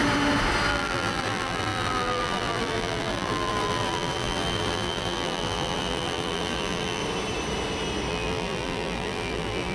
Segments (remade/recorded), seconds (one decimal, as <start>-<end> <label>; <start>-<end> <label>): 0.0-0.7 recorded; 0.7-7.0 remade; 7.0-8.1 recorded; 8.1-9.7 remade